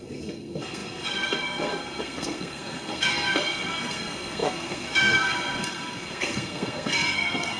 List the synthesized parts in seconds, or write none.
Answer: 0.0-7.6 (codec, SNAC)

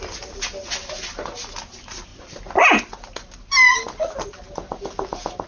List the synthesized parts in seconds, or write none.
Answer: none